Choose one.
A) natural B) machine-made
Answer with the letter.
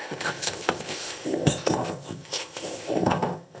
B